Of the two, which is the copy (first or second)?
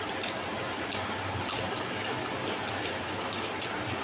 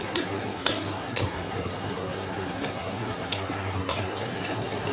second